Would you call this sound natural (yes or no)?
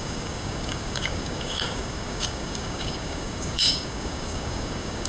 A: no